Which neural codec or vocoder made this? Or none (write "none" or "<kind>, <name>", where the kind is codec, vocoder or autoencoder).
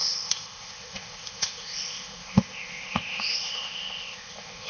codec, ZipCodec